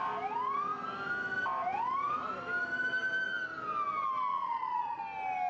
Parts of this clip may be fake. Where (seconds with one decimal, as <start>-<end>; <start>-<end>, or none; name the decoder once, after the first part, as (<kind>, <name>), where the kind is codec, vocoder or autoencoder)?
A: 4.3-5.0 (vocoder, Vocos)